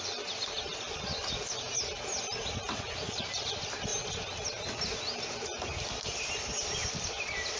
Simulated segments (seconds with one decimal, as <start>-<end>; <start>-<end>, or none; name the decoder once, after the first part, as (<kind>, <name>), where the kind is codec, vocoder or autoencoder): 2.4-3.5 (vocoder, Vocos)